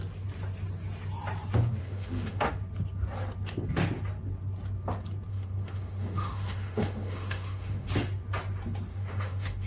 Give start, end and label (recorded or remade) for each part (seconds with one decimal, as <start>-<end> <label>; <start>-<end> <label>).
0.0-1.8 recorded; 1.8-2.5 remade; 2.5-5.3 recorded; 5.3-7.9 remade; 7.9-8.9 recorded; 8.9-9.7 remade